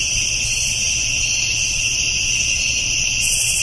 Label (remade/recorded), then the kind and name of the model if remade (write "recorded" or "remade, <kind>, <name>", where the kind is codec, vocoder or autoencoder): recorded